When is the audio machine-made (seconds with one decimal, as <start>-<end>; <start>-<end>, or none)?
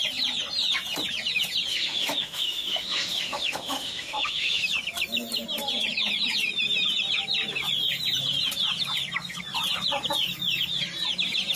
1.7-4.6